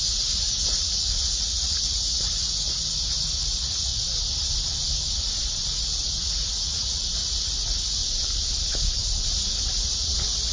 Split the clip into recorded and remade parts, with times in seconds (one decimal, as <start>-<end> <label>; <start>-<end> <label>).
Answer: 0.0-3.9 remade; 3.9-5.7 recorded; 5.7-8.0 remade; 8.0-9.7 recorded; 9.7-10.5 remade

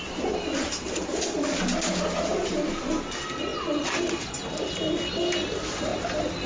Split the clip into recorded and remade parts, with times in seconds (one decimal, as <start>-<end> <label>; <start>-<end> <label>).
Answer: 0.0-6.5 recorded